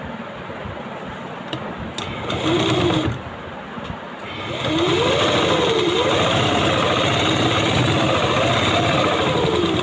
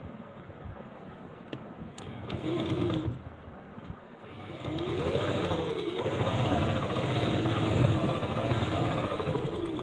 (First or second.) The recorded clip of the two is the first